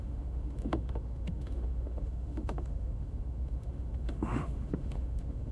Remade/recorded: remade